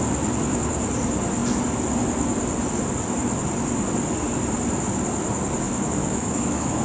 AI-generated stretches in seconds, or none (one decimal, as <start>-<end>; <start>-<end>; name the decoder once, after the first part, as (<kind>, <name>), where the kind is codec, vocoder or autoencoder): 6.0-6.8 (autoencoder, DAC-VAE)